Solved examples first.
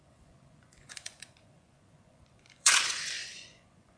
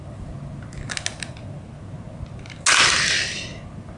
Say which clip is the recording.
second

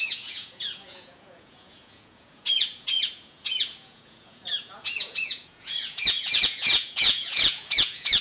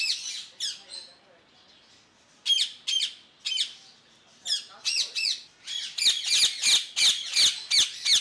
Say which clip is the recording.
second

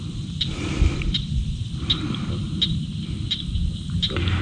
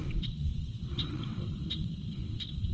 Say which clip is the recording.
first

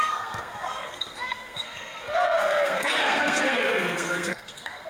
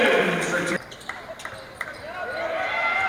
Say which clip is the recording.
second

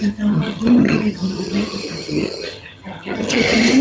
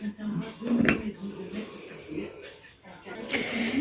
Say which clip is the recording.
second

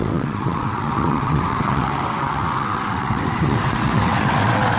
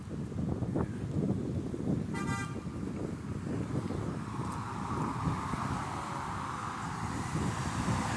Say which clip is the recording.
second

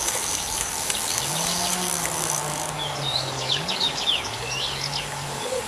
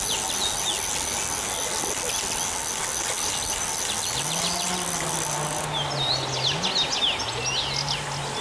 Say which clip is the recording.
second